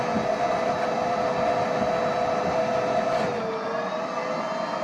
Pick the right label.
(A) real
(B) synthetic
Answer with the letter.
A